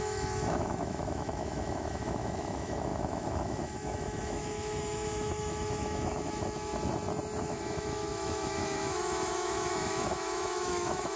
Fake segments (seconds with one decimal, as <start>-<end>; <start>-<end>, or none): 0.0-6.7; 7.4-11.2